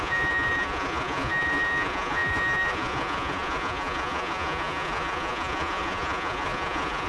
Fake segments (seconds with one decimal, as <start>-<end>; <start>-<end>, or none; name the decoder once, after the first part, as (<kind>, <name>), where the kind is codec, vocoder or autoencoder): 0.0-7.1 (vocoder, Vocos)